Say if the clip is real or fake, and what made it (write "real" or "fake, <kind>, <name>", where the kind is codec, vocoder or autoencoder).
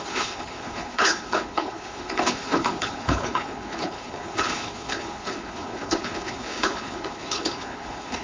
fake, codec, HILCodec